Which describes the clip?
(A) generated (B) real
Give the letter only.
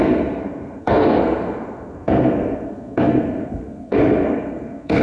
A